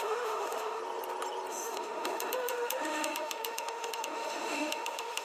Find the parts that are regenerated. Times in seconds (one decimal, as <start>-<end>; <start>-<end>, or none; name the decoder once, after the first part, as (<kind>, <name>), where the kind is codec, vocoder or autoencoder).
0.0-0.8 (autoencoder, DAC-VAE); 1.5-5.2